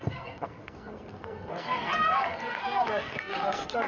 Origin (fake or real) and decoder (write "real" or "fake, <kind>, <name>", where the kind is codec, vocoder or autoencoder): fake, codec, SNAC